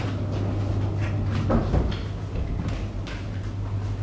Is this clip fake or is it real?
real